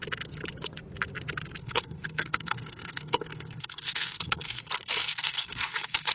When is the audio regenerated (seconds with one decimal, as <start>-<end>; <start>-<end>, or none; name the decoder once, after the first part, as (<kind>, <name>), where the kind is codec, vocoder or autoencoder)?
1.6-4.6 (codec, SNAC); 5.0-6.1